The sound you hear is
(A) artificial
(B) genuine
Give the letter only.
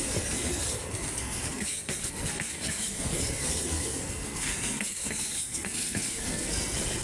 A